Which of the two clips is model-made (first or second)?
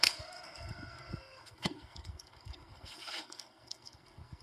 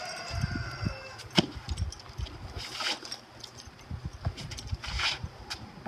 first